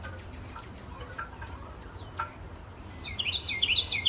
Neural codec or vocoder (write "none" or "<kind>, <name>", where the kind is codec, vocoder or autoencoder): none